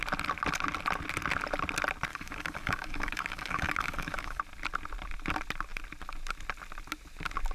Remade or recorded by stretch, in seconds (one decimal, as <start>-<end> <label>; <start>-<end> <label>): 0.0-2.1 recorded; 2.1-4.4 remade; 4.4-7.5 recorded